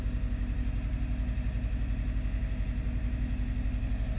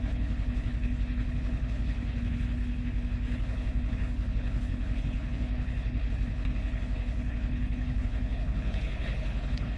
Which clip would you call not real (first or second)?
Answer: second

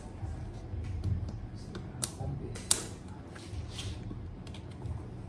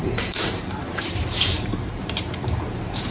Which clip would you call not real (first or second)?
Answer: second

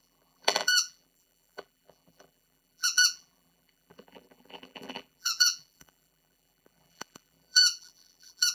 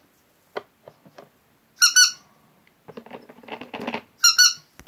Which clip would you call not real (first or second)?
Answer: first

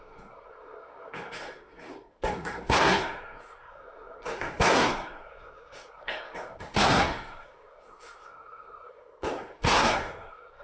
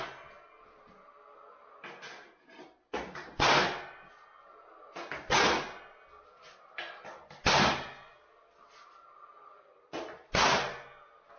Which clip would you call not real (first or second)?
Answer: first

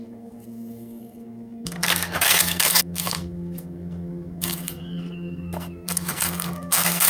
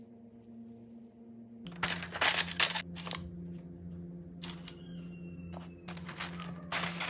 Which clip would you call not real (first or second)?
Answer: first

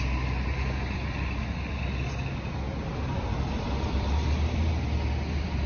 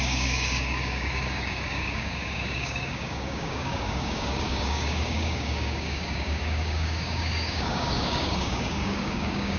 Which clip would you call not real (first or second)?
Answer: second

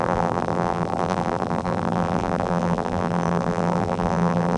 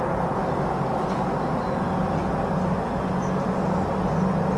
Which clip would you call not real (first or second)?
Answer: first